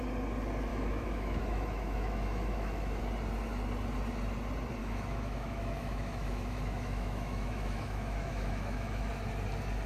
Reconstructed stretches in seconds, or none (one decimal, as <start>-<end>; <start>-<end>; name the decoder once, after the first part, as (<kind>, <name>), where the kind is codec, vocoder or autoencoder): 0.7-3.0 (autoencoder, DAC-VAE); 4.8-9.1